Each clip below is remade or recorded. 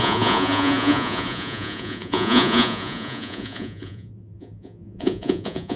remade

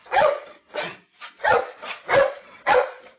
remade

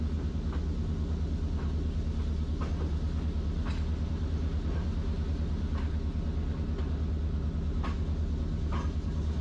recorded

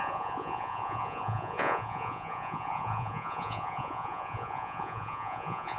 remade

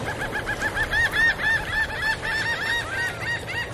recorded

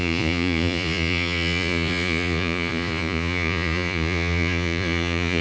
remade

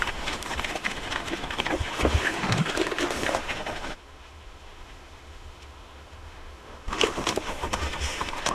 remade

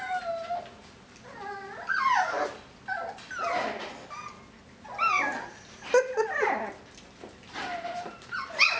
recorded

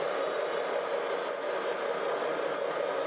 recorded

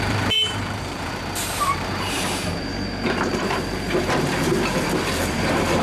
remade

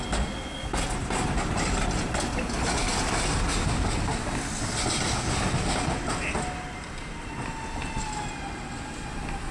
recorded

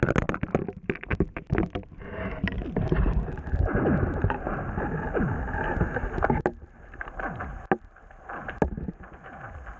recorded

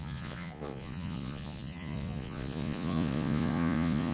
remade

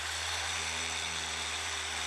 remade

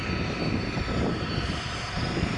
remade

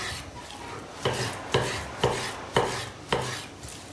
recorded